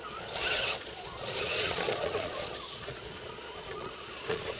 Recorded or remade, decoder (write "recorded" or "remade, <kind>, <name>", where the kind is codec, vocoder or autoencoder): remade, vocoder, Vocos